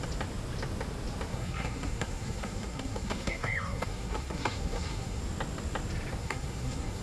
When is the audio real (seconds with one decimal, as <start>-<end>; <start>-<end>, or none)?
0.0-1.3; 5.2-6.2